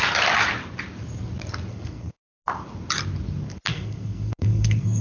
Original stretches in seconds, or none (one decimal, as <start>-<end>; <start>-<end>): 0.0-1.7; 2.2-3.7